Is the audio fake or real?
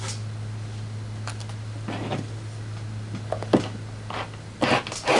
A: real